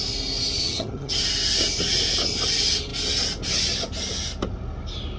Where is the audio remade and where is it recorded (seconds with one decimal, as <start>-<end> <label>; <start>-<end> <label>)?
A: 0.0-0.6 recorded; 0.6-1.1 remade; 1.1-5.2 recorded